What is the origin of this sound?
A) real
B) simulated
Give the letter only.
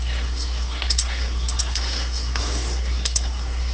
B